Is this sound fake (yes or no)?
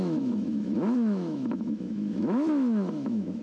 yes